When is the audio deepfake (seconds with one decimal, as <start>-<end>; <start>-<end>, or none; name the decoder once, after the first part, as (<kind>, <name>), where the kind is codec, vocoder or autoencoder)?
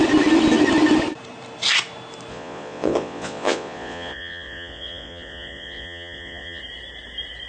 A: 2.3-6.6 (vocoder, Vocos)